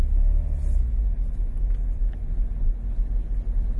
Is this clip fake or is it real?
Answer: real